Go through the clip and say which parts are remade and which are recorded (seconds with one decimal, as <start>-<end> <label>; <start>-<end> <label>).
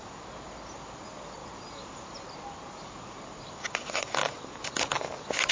0.0-5.5 recorded